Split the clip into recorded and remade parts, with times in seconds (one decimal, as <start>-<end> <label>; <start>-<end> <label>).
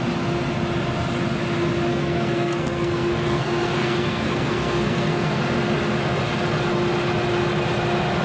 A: 0.0-1.9 recorded; 1.9-5.4 remade; 5.4-8.2 recorded